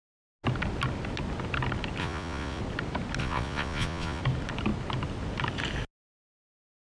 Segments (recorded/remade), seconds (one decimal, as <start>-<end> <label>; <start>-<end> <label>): 0.0-2.0 recorded; 2.0-2.6 remade; 2.6-3.2 recorded; 3.2-4.2 remade; 4.2-7.0 recorded